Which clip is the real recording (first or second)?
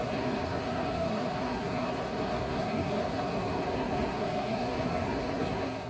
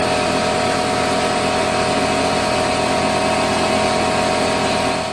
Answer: second